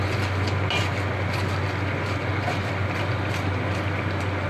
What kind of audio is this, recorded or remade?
recorded